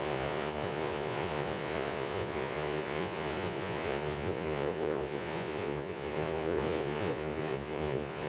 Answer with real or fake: fake